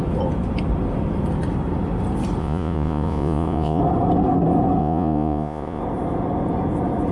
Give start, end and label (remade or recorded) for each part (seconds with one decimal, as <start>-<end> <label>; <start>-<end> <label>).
0.0-2.4 recorded; 2.4-3.8 remade; 3.8-4.8 recorded; 4.8-5.8 remade; 5.8-7.1 recorded